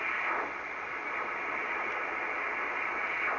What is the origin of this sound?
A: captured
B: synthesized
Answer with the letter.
A